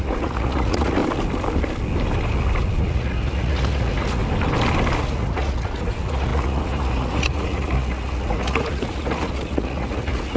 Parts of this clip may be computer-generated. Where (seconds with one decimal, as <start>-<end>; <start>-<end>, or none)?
0.0-1.0; 2.8-4.2; 5.0-10.4